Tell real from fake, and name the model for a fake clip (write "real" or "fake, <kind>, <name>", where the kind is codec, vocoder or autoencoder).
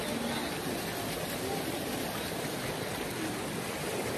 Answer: real